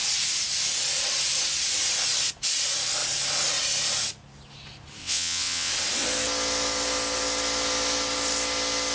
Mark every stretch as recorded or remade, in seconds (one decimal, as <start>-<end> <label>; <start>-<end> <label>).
0.0-5.0 recorded; 5.0-5.7 remade; 5.7-8.9 recorded